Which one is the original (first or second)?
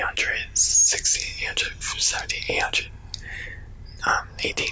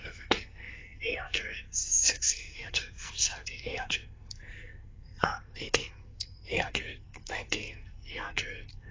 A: first